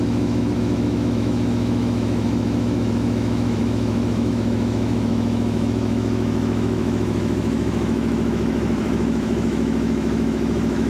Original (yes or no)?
no